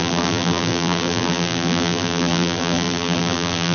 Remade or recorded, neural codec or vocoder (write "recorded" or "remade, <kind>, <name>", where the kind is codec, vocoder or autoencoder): remade, vocoder, BigVGAN v2